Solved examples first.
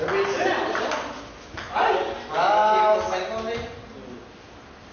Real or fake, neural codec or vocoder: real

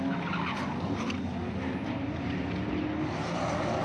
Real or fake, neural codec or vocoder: real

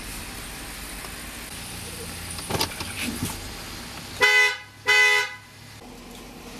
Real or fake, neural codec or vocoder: real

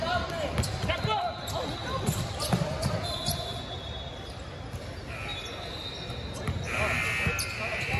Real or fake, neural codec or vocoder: real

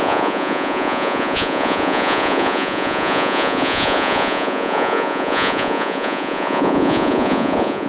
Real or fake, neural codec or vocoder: fake, vocoder, Vocos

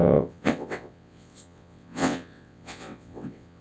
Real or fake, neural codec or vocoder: fake, vocoder, WaveNeXt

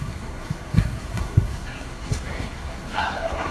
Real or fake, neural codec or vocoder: fake, codec, SNAC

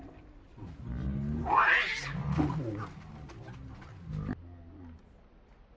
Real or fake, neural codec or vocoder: real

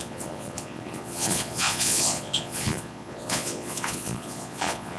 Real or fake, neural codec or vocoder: fake, vocoder, Vocos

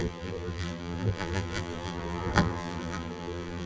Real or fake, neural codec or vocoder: fake, vocoder, BigVGAN v2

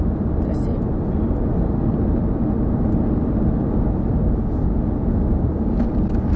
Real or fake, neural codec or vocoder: real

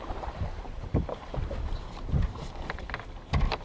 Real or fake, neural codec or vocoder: real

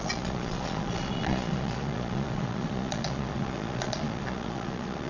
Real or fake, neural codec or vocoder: fake, vocoder, Vocos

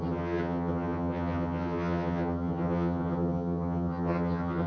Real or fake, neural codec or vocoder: fake, vocoder, HiFi-GAN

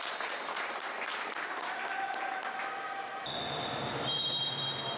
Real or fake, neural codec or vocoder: real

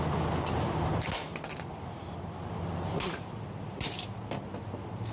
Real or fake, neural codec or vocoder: real